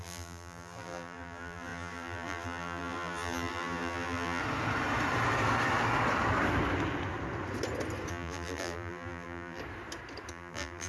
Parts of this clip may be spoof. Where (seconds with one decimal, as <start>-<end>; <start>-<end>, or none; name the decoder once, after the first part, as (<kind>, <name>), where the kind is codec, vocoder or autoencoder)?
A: 0.0-4.4 (vocoder, BigVGAN v2); 8.1-9.6; 10.3-10.9